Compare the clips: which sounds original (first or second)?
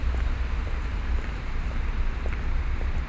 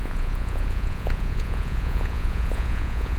first